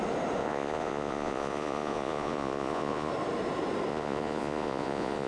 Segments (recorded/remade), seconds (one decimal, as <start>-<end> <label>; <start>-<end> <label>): 0.0-0.4 recorded; 0.4-3.1 remade; 3.1-3.9 recorded; 3.9-5.3 remade